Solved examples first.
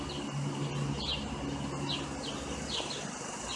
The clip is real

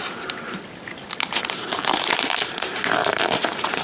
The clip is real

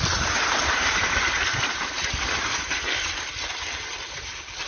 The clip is real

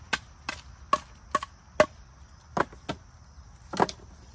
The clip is real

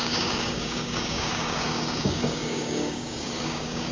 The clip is fake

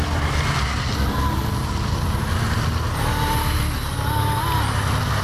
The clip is real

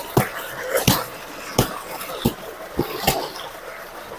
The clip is real